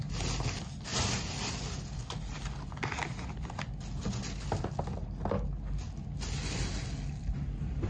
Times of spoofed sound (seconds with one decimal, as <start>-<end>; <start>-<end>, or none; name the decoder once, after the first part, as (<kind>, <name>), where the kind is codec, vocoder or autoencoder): none